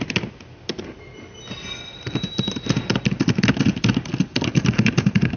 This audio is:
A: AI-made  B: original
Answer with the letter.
B